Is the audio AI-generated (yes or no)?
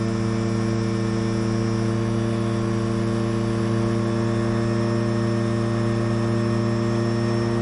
no